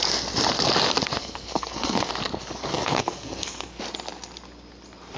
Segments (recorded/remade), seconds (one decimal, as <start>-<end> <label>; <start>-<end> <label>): 0.0-1.2 recorded; 1.2-2.1 remade; 2.1-2.7 recorded; 2.7-3.8 remade; 3.8-5.2 recorded